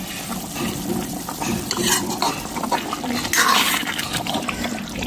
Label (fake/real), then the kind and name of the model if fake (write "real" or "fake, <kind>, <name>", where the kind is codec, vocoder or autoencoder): real